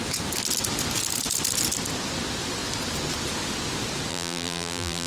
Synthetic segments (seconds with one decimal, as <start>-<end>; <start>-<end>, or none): 4.1-5.1